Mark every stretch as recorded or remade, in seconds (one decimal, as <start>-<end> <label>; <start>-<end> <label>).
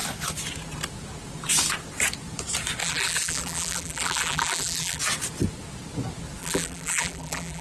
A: 0.0-2.8 recorded; 2.8-5.0 remade; 5.0-6.4 recorded; 6.4-7.6 remade